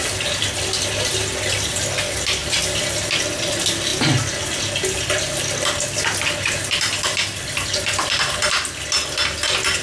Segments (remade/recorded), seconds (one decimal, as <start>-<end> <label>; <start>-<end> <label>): 0.0-2.4 recorded; 2.4-2.9 remade; 2.9-9.8 recorded